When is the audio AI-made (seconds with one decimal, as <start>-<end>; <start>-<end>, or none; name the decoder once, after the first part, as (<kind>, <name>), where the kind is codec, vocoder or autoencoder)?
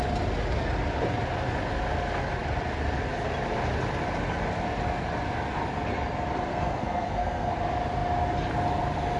6.5-7.5 (codec, SNAC)